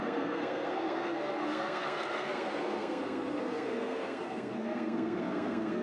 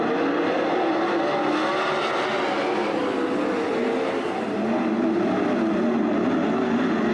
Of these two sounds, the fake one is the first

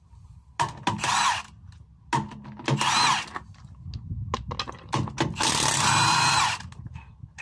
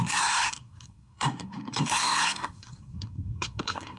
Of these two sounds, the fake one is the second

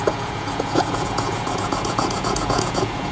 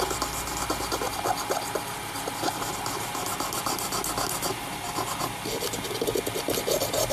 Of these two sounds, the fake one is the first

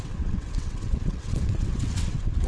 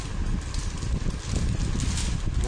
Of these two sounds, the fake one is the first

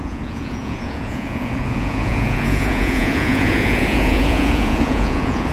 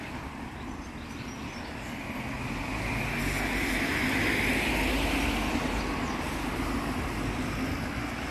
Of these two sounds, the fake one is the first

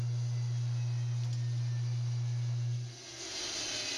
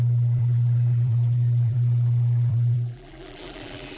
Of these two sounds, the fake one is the second